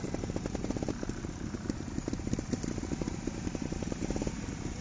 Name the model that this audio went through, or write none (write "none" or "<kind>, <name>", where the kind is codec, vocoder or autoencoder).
vocoder, BigVGAN v2